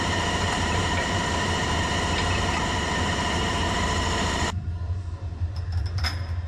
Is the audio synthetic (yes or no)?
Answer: yes